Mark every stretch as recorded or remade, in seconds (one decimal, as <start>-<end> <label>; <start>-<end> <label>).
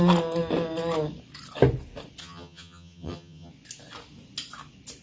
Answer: 0.0-2.2 recorded; 2.2-3.5 remade; 3.5-5.0 recorded